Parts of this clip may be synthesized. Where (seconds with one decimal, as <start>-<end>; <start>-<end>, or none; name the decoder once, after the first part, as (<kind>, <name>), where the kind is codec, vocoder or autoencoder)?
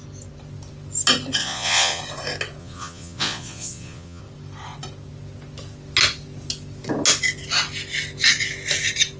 1.4-2.0 (vocoder, Vocos); 2.6-4.2